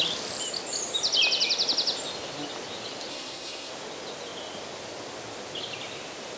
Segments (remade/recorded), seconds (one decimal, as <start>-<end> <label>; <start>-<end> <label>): 0.0-3.1 recorded; 3.1-3.7 remade; 3.7-6.4 recorded